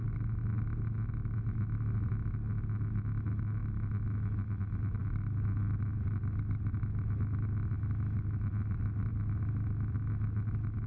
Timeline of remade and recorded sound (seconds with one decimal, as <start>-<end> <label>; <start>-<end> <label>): 0.0-10.9 recorded